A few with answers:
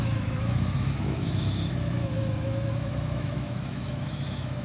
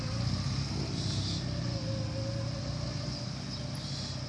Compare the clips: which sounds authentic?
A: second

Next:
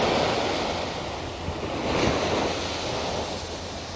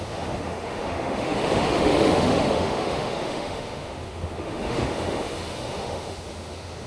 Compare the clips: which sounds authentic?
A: first